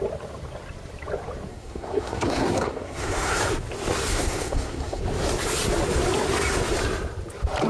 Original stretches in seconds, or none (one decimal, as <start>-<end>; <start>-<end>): 0.0-1.5; 3.4-4.1; 5.0-7.7